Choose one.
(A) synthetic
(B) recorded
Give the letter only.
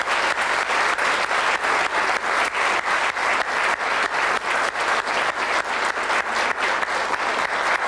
B